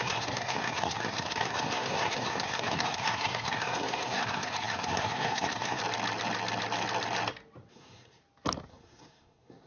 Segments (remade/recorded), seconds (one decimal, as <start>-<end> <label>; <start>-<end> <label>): 0.0-5.8 remade; 5.8-7.7 recorded; 7.7-8.2 remade; 8.2-8.7 recorded; 8.7-9.7 remade